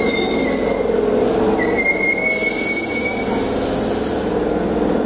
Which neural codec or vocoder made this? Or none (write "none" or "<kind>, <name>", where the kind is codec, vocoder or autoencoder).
none